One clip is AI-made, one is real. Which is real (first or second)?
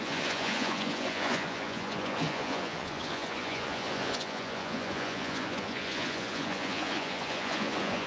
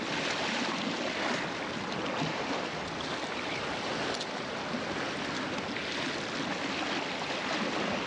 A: second